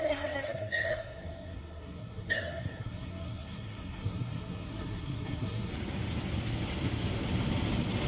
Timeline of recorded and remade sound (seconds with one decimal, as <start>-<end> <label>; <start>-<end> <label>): 0.0-5.7 remade; 5.7-8.1 recorded